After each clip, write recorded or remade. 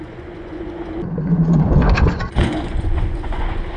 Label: remade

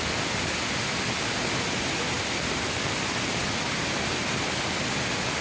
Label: recorded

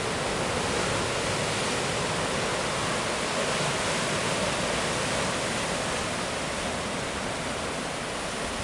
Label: recorded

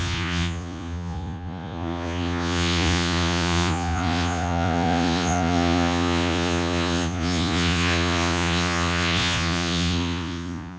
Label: remade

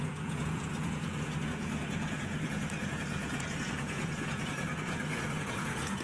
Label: remade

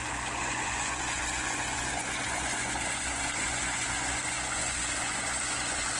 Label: remade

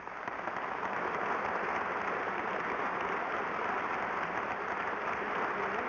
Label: recorded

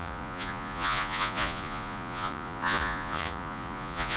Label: remade